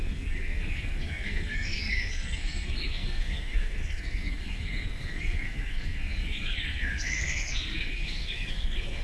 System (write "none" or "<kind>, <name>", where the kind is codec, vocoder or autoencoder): codec, SNAC